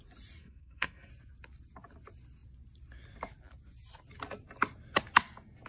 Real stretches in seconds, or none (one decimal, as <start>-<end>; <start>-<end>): 0.0-0.4; 1.1-5.7